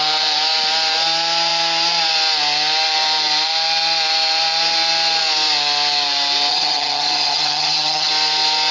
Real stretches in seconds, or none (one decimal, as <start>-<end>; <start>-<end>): 0.0-6.5; 8.1-8.7